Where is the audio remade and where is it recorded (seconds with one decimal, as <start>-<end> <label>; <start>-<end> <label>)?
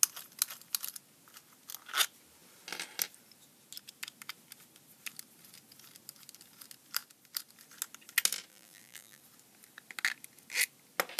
0.0-8.5 recorded; 8.5-9.2 remade; 9.2-11.2 recorded